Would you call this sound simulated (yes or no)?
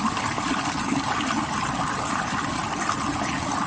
no